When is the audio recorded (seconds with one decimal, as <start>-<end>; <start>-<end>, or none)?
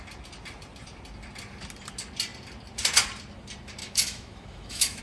0.0-3.8